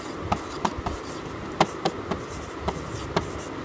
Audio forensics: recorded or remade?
recorded